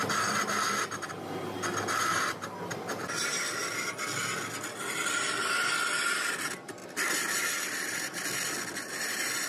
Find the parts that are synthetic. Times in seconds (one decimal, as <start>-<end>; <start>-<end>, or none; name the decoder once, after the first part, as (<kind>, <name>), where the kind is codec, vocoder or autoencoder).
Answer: none